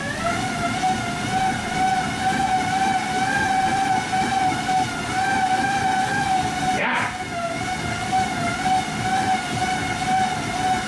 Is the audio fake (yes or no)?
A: no